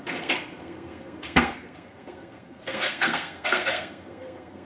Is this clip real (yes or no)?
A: no